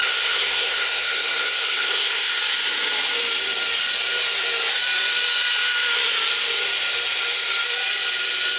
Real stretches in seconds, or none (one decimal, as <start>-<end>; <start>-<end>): 2.4-8.6